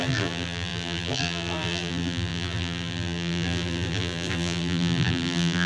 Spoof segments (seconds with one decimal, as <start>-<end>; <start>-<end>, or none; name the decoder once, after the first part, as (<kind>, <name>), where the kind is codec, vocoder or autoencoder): 0.0-5.7 (vocoder, BigVGAN v2)